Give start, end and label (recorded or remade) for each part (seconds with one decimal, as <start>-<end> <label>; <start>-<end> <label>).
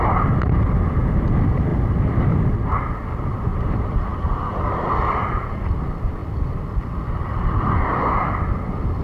0.0-3.5 recorded; 3.5-4.4 remade; 4.4-9.0 recorded